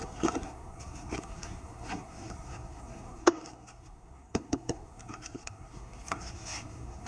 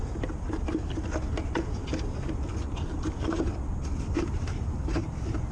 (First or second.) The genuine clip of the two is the second